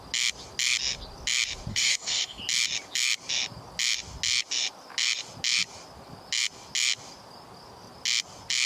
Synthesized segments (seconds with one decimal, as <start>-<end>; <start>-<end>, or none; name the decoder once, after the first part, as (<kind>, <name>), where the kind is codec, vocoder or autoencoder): 1.7-2.4 (codec, DAC)